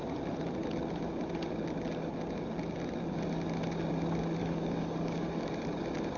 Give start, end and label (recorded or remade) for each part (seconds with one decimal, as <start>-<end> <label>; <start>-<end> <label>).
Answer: 0.0-4.4 recorded; 4.4-5.5 remade; 5.5-6.2 recorded